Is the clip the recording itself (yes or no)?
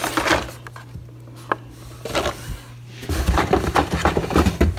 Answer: yes